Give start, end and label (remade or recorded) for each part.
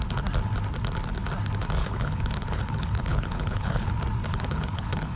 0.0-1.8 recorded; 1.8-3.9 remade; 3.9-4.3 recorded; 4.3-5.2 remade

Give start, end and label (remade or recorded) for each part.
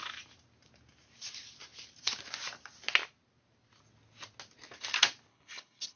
0.0-5.3 recorded; 5.3-6.0 remade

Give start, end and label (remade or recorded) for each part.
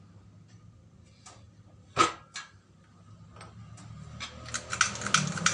0.0-5.5 recorded